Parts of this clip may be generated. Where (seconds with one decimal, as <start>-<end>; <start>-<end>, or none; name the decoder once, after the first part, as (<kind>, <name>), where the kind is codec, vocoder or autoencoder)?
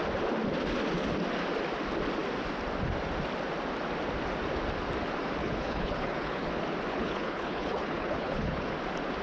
5.4-6.5 (codec, HILCodec); 6.9-8.7